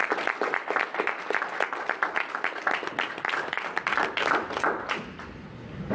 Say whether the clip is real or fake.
real